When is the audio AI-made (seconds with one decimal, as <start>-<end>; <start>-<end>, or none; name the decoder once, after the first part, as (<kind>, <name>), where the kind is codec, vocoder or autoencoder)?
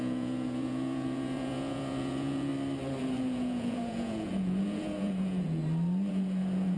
0.0-2.5 (vocoder, Vocos); 3.0-5.6; 6.1-6.8